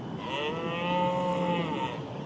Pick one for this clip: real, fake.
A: real